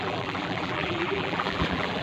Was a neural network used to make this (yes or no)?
yes